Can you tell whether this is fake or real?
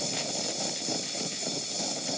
real